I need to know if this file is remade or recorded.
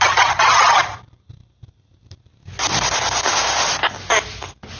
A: recorded